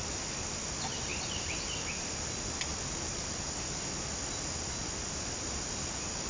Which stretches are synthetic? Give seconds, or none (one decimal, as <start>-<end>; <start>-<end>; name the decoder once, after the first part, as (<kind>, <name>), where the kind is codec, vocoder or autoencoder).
none